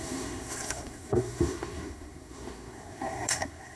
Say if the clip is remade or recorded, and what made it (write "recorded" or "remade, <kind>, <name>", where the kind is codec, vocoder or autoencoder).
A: remade, codec, SNAC